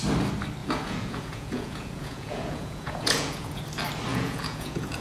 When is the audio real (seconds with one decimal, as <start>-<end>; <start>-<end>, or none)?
0.0-0.6; 3.6-4.1

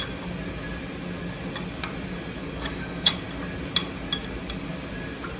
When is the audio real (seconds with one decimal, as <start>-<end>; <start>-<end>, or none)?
0.0-2.4; 3.1-5.4

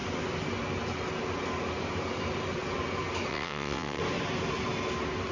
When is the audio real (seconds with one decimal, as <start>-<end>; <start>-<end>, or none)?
0.0-3.3; 4.0-5.3

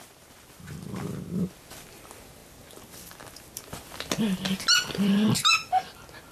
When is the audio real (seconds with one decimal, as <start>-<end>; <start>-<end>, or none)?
0.0-6.3